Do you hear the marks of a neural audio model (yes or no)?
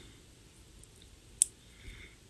no